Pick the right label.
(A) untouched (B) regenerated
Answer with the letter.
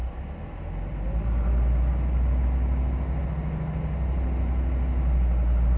A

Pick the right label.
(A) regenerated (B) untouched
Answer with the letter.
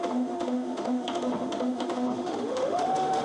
A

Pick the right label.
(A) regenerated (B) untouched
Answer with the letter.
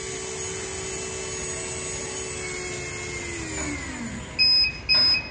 B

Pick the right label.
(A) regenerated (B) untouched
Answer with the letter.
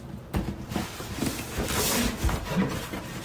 B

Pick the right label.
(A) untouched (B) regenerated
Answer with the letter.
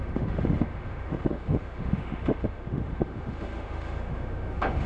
B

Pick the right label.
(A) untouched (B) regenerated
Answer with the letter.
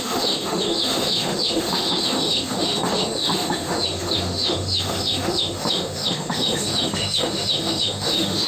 B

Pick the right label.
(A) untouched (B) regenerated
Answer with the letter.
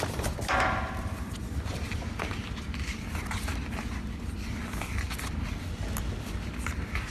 A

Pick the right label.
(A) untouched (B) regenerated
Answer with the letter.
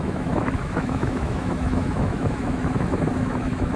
B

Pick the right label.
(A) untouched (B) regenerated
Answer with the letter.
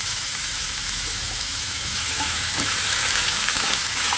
B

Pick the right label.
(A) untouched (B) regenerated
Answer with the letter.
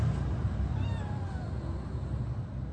A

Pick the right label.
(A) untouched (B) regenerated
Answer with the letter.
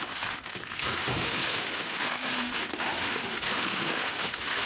B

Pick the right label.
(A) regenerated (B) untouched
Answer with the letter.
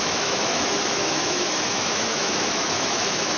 A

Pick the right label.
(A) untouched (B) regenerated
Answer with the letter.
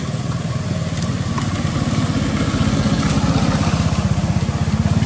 A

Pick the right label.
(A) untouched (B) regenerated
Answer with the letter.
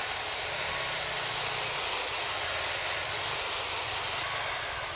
A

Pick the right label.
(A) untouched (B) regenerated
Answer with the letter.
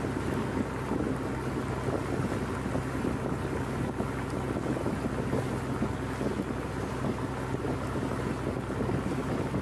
A